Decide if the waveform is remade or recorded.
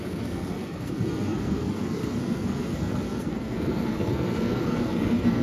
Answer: remade